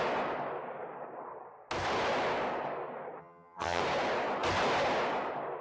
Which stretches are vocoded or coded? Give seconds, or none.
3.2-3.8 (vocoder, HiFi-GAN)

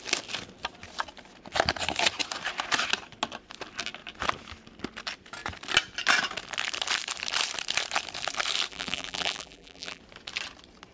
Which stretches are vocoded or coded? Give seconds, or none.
8.7-10.0 (vocoder, BigVGAN v2)

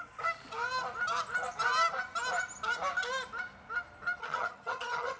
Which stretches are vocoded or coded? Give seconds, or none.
4.2-5.2 (vocoder, HiFi-GAN)